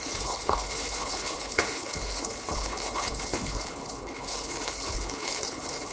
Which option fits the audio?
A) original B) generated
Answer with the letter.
B